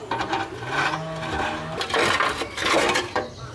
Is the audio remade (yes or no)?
no